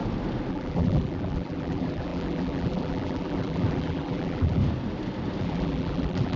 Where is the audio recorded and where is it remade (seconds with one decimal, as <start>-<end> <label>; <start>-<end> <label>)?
0.0-0.5 recorded; 0.5-4.6 remade; 4.6-5.4 recorded; 5.4-6.4 remade